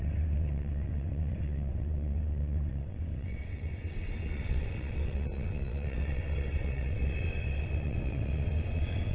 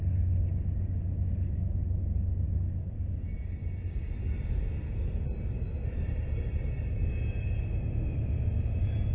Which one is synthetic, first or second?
first